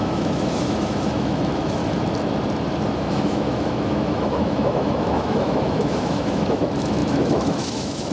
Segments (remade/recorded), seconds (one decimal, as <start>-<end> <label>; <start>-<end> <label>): 0.0-1.8 remade; 1.8-2.9 recorded; 2.9-8.1 remade